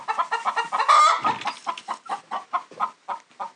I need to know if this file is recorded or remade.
recorded